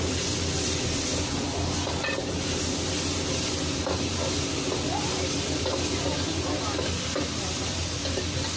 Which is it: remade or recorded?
recorded